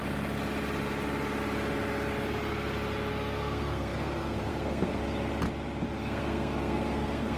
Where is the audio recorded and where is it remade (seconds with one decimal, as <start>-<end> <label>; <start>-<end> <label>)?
0.0-3.1 recorded; 3.1-5.0 remade; 5.0-5.9 recorded; 5.9-7.4 remade